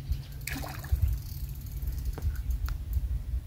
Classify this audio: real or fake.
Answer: real